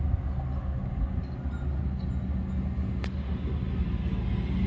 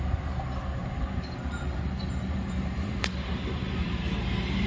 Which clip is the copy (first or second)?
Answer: second